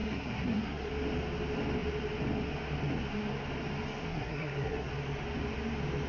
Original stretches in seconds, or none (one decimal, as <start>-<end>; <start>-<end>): 0.9-4.1; 4.9-6.1